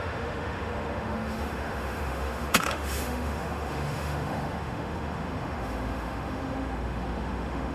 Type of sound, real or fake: fake